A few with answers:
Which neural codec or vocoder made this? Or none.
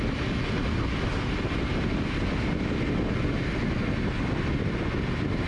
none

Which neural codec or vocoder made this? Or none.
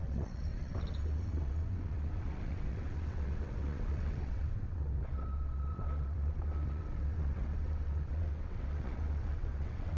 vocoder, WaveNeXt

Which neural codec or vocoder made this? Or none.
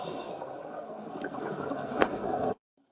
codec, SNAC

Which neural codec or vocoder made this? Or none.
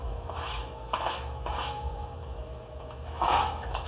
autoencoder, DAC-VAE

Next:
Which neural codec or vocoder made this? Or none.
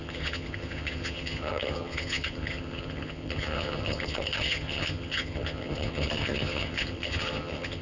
vocoder, HiFi-GAN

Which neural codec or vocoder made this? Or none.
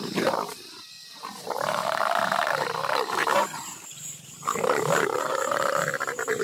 vocoder, BigVGAN v2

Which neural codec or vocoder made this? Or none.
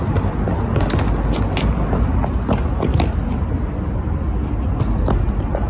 none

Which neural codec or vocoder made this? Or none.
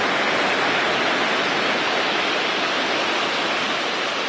none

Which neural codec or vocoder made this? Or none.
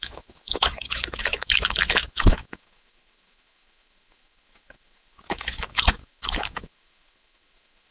autoencoder, DAC-VAE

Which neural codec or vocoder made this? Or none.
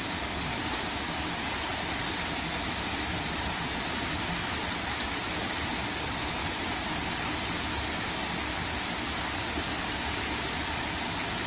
none